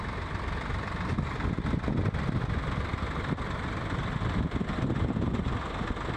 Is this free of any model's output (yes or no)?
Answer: yes